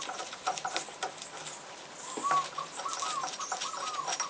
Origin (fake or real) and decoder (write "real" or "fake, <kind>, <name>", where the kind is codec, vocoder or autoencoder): real